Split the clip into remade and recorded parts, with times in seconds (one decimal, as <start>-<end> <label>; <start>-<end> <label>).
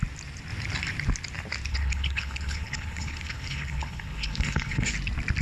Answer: 0.0-1.7 recorded; 1.7-4.9 remade; 4.9-5.4 recorded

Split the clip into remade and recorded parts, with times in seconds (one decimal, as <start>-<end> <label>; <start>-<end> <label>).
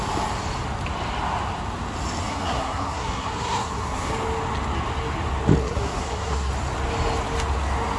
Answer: 0.0-2.3 recorded; 2.3-4.1 remade; 4.1-5.6 recorded; 5.6-6.5 remade; 6.5-8.0 recorded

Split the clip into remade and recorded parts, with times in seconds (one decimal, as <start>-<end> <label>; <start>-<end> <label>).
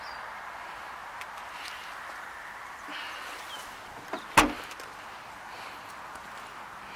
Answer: 0.0-7.0 recorded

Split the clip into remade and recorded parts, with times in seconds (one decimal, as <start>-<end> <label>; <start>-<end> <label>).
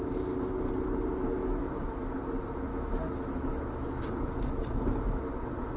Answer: 0.0-1.4 recorded; 1.4-2.1 remade; 2.1-2.7 recorded; 2.7-4.1 remade; 4.1-5.8 recorded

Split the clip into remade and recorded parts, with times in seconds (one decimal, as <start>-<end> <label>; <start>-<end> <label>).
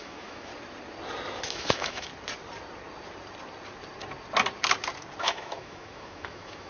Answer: 0.0-0.5 remade; 0.5-1.4 recorded; 1.4-2.1 remade; 2.1-5.2 recorded; 5.2-6.7 remade